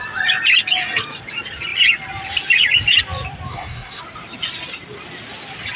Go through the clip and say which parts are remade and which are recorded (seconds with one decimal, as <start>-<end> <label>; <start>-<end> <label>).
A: 0.0-3.5 recorded; 3.5-4.0 remade; 4.0-5.8 recorded